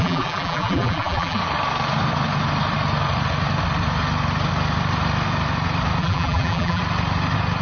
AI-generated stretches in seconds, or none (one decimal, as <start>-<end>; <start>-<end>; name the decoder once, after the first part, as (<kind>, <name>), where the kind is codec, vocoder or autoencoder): 0.0-1.4 (vocoder, BigVGAN v2); 6.0-6.8